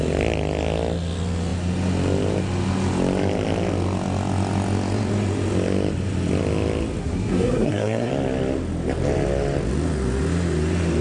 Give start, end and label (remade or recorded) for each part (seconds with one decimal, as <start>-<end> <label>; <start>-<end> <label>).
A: 0.0-7.0 recorded; 7.0-8.1 remade; 8.1-11.0 recorded